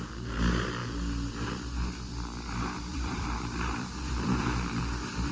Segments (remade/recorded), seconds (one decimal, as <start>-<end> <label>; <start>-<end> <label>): 0.0-2.9 recorded; 2.9-4.8 remade; 4.8-5.3 recorded